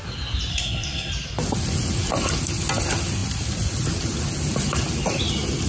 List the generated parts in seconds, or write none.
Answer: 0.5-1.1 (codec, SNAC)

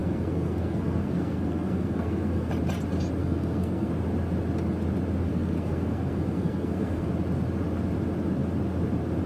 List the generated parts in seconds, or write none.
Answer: 0.0-2.5 (codec, SNAC); 3.2-3.9; 5.3-7.1

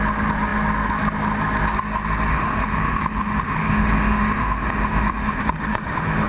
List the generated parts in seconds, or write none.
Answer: 2.3-6.3 (autoencoder, DAC-VAE)